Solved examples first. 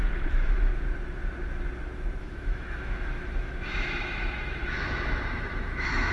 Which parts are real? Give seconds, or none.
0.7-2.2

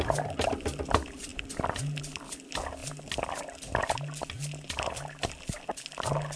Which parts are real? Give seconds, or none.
0.0-6.4

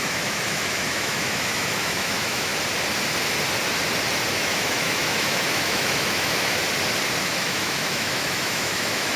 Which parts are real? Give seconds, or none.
2.5-4.3; 6.6-7.2